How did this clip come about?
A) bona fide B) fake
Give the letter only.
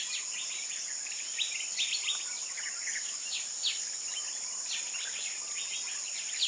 A